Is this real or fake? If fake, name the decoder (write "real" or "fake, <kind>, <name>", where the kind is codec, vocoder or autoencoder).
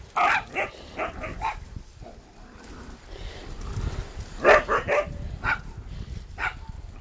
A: real